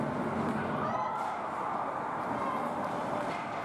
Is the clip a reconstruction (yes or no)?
no